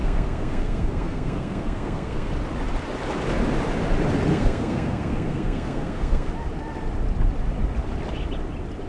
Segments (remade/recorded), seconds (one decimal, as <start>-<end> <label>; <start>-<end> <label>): 0.0-2.3 remade; 2.3-4.3 recorded; 4.3-6.3 remade; 6.3-8.9 recorded